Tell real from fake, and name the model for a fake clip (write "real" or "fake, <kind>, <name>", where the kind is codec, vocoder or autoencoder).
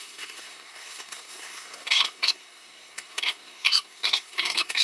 fake, codec, SNAC